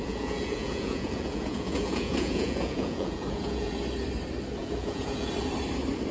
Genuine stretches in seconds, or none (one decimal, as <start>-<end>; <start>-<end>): 3.7-4.6; 5.3-6.1